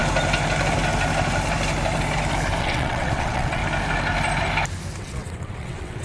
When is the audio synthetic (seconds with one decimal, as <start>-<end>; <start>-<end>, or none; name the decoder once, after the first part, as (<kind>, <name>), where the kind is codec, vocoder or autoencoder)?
2.6-3.6 (vocoder, WaveNeXt); 5.0-6.0